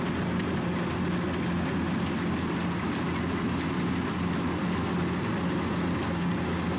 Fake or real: real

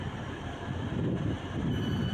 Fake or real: fake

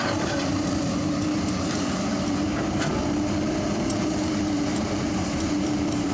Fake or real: fake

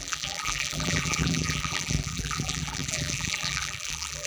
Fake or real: fake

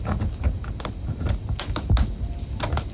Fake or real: real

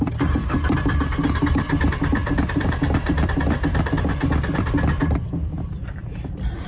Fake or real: fake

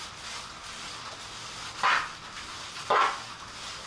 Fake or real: real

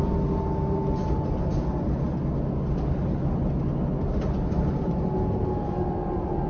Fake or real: real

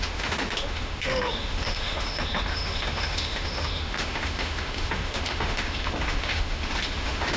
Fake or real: fake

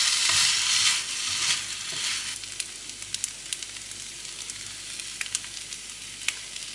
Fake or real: real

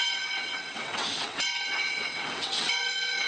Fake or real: fake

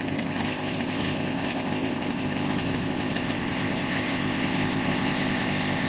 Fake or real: fake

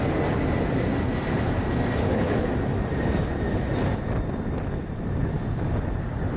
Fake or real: real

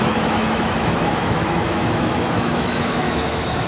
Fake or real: fake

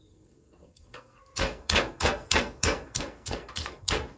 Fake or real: fake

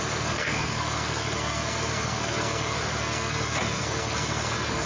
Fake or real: fake